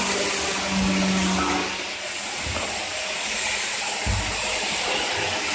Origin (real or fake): real